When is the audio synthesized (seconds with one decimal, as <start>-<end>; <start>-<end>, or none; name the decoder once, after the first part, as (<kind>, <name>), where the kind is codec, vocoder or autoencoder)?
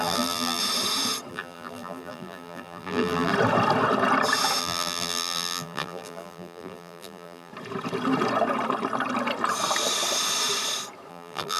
0.0-0.6 (vocoder, BigVGAN v2); 1.3-3.3; 4.6-7.5; 11.1-11.6